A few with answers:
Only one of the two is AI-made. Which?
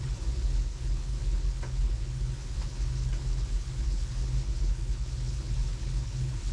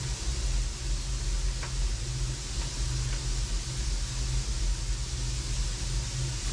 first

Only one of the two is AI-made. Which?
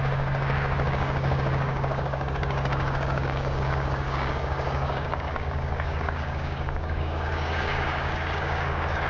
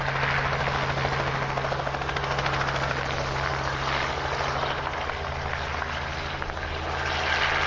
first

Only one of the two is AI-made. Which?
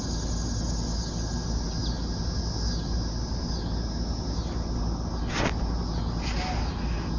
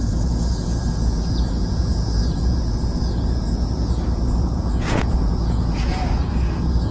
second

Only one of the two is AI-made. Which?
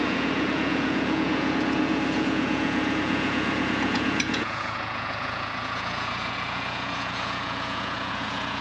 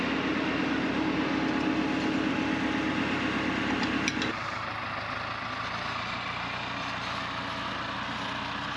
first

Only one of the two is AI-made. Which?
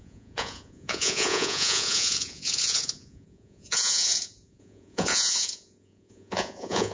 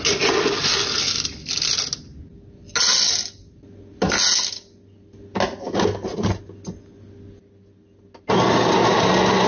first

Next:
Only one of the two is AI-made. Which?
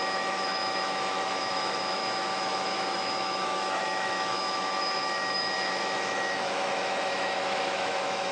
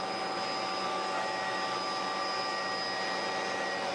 first